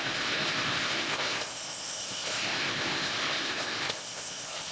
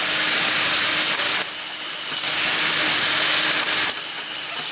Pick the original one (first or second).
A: second